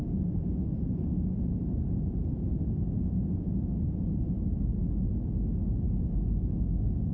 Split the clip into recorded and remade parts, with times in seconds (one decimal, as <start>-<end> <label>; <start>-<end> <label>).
0.0-7.1 recorded